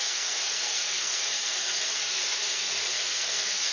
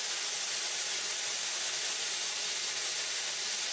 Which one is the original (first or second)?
second